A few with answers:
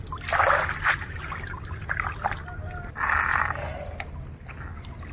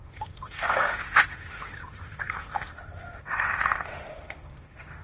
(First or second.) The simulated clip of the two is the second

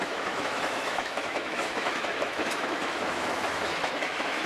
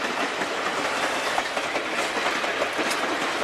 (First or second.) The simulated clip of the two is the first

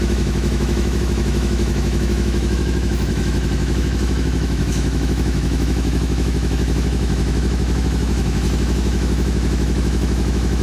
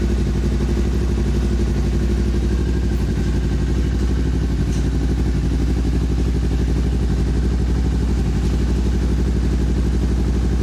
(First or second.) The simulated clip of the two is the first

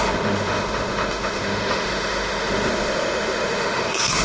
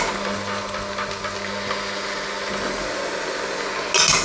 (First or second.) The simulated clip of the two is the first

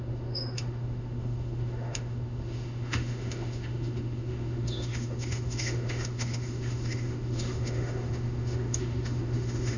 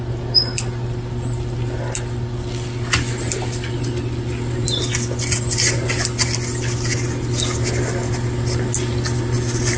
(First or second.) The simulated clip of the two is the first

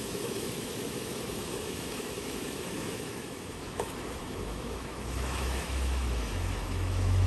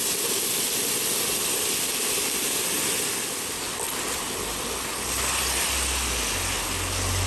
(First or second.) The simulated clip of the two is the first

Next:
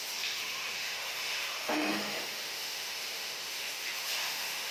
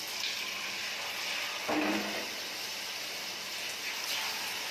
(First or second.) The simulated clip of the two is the first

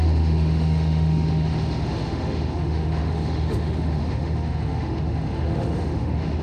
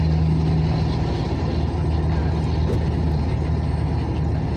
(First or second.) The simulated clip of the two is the first